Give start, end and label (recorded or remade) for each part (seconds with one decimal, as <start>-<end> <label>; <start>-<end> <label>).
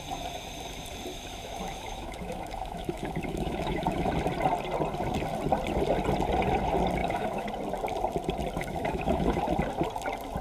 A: 0.0-1.1 recorded; 1.1-4.1 remade; 4.1-7.0 recorded; 7.0-7.5 remade; 7.5-8.6 recorded; 8.6-9.4 remade; 9.4-10.4 recorded